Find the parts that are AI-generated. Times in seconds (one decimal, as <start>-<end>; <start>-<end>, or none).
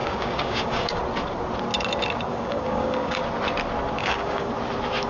0.0-1.0; 2.3-3.2; 4.0-4.5